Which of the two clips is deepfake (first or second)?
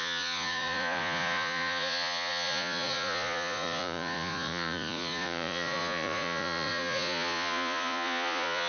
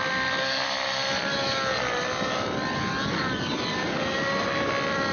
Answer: first